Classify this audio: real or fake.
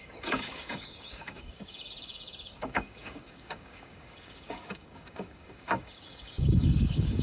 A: fake